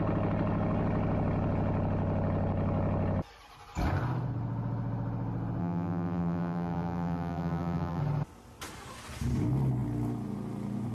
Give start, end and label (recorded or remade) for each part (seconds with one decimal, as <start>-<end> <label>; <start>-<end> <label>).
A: 0.0-5.6 recorded; 5.6-8.0 remade; 8.0-10.9 recorded